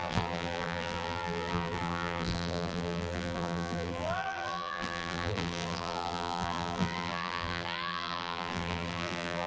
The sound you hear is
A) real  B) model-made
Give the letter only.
B